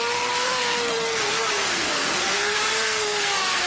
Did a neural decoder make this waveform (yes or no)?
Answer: yes